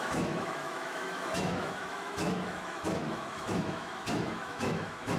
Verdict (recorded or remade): remade